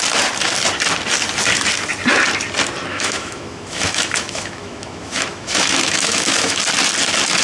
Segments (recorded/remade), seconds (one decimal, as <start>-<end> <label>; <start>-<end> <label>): 0.0-2.9 recorded; 2.9-6.6 remade; 6.6-7.4 recorded